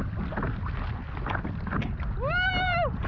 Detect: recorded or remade recorded